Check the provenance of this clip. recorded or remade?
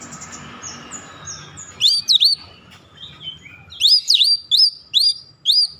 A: recorded